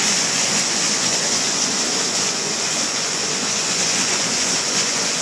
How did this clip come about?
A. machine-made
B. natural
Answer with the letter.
A